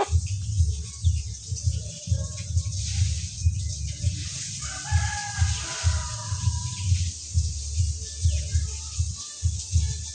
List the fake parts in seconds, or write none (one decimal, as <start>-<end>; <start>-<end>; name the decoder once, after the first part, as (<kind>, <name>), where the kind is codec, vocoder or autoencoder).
1.0-4.4 (vocoder, BigVGAN v2); 5.2-7.6